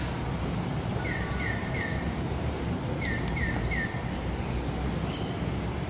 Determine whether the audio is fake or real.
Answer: real